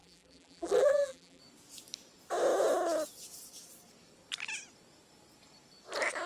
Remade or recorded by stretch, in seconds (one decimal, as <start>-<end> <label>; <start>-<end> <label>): 0.0-1.4 remade; 1.4-6.3 recorded